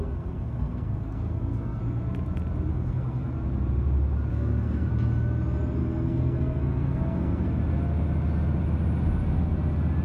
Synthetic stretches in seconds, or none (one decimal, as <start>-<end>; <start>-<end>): 0.0-1.8; 2.7-3.3; 4.3-4.9; 5.8-7.6